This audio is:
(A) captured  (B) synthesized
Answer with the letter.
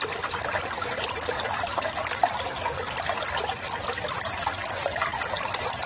A